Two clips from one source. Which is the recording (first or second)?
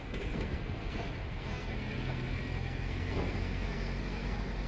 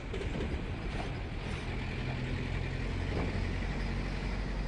second